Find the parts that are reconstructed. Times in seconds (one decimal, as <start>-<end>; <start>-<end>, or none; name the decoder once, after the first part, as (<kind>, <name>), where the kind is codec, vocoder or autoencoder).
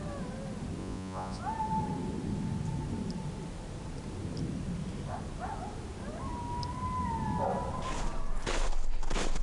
0.8-1.4 (vocoder, Vocos)